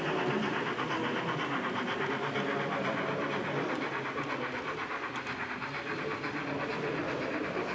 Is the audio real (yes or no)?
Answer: yes